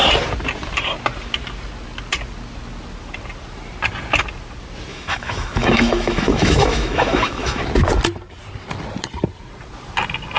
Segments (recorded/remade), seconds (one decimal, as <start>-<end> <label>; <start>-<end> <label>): 0.0-4.9 recorded; 4.9-7.6 remade; 7.6-10.4 recorded